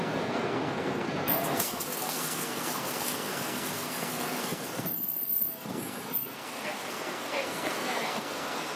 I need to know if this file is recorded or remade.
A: remade